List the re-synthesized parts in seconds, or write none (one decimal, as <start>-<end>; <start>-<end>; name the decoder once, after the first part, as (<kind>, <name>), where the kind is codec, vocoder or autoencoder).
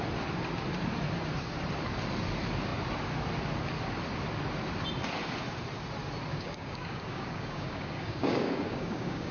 6.3-9.3 (codec, DAC)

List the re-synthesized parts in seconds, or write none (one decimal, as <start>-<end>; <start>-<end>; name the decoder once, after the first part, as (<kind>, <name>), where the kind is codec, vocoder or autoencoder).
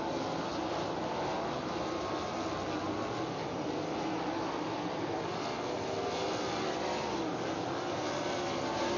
none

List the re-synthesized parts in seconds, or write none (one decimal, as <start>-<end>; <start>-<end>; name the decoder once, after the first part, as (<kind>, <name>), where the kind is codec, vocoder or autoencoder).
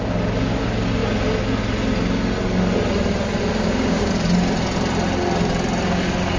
3.5-4.1 (codec, DAC)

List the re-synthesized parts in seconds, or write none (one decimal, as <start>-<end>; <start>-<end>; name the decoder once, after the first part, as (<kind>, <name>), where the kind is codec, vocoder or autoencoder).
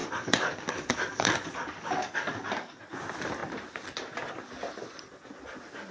0.0-2.8 (codec, DAC)